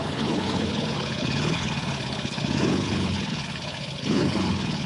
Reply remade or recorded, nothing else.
remade